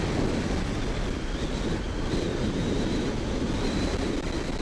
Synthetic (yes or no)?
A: no